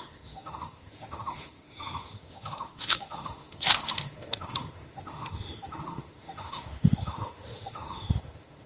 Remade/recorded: remade